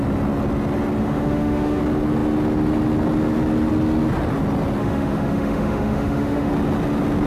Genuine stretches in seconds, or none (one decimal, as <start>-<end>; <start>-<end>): 0.0-1.0; 1.8-4.8; 6.5-7.3